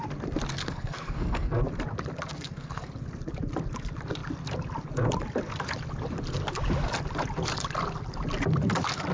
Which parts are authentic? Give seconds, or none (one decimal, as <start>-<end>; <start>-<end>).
0.0-0.5; 1.5-2.3; 2.9-9.1

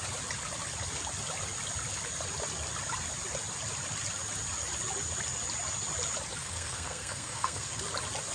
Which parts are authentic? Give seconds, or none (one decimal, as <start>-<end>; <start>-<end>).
0.0-6.4; 7.8-8.3

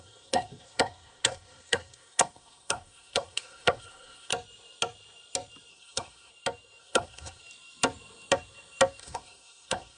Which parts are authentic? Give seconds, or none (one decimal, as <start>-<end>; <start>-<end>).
4.3-5.7; 6.3-6.8; 7.4-9.0

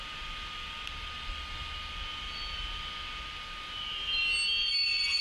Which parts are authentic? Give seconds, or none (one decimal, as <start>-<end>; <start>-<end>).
0.0-5.2

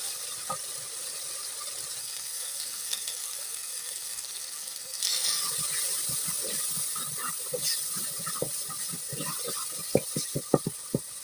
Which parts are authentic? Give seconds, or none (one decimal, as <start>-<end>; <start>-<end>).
0.0-2.0; 5.4-11.2

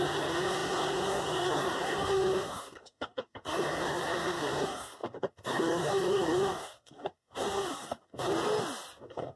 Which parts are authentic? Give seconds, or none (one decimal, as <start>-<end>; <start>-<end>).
8.3-9.0

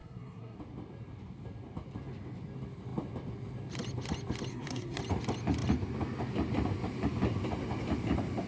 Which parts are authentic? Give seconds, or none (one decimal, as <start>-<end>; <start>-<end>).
0.6-4.5; 5.0-8.5